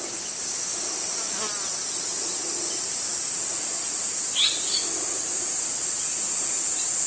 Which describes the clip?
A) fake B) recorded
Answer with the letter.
B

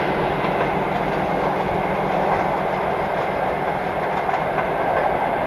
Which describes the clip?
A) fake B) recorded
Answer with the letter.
B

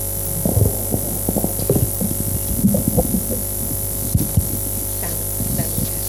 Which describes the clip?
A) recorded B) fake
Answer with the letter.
A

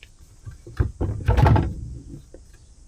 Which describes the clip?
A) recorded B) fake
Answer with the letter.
A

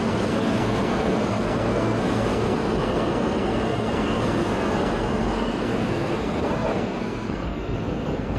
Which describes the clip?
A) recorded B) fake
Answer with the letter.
B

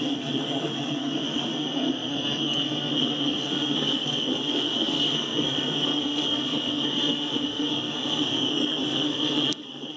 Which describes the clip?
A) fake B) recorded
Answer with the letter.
A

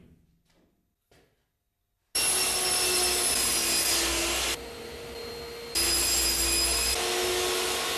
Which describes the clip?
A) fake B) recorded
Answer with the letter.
B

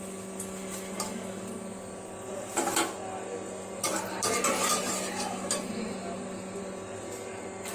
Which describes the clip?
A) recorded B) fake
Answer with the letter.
A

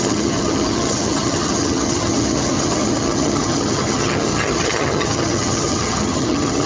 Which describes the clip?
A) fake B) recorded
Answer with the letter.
A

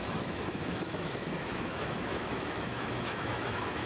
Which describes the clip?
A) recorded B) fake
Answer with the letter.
B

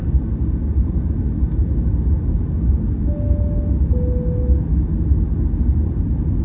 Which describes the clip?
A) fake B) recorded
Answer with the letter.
B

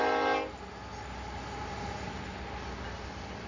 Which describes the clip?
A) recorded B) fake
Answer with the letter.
A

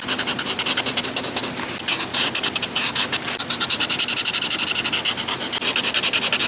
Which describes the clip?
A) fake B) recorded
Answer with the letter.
B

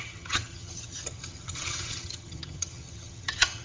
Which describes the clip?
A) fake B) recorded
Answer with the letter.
A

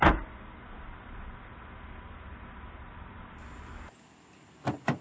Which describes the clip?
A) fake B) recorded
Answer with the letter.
B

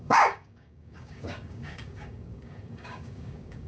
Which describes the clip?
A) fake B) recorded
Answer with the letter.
A